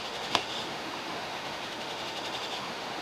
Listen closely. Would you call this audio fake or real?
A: fake